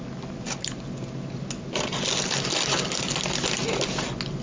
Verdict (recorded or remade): recorded